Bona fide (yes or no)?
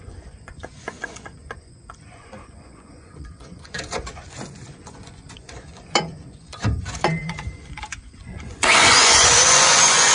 no